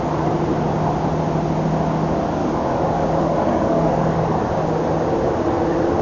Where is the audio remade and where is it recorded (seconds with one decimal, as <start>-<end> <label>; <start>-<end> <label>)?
0.0-2.4 recorded; 2.4-4.4 remade; 4.4-6.0 recorded

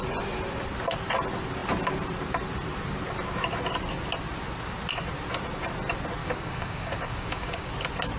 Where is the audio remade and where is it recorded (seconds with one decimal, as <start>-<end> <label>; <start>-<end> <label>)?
0.0-6.2 recorded; 6.2-7.7 remade; 7.7-8.2 recorded